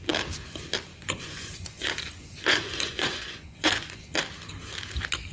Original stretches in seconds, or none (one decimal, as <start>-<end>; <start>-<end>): 0.0-0.9; 4.1-5.3